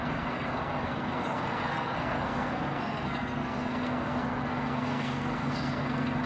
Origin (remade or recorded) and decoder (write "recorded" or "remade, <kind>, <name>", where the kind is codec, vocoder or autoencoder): remade, codec, SNAC